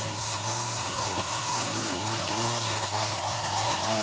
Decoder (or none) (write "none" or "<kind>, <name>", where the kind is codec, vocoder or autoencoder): codec, SNAC